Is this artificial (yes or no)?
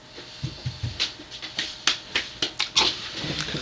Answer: no